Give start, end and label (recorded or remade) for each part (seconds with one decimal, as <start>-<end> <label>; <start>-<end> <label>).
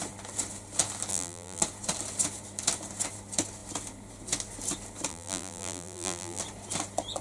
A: 0.0-1.1 recorded; 1.1-1.6 remade; 1.6-5.1 recorded; 5.1-6.4 remade; 6.4-7.2 recorded